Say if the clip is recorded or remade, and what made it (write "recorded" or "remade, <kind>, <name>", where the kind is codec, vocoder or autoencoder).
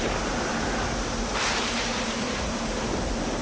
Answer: remade, vocoder, BigVGAN v2